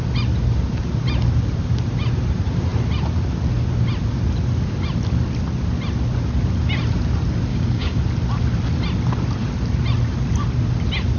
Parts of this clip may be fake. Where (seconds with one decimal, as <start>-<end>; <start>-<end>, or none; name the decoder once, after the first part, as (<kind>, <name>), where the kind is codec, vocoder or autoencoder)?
7.5-8.0 (codec, DAC)